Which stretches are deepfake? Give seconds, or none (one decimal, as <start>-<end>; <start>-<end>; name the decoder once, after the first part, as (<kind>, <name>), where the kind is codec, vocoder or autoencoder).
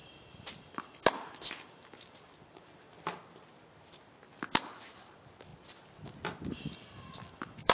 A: none